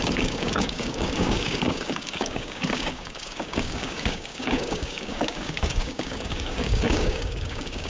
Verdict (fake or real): fake